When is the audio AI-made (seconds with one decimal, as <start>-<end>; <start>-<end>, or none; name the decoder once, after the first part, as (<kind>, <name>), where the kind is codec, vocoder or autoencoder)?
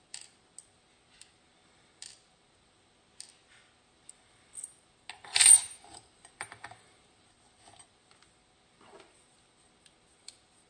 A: 5.4-7.3 (vocoder, BigVGAN v2)